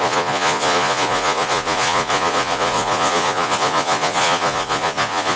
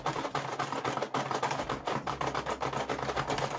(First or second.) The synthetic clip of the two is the first